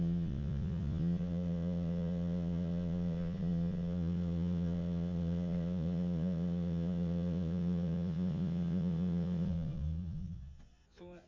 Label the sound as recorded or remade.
remade